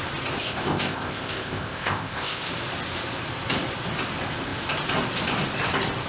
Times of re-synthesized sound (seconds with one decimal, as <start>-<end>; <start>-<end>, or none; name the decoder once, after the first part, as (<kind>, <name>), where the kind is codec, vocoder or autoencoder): 0.4-2.5 (codec, ZipCodec)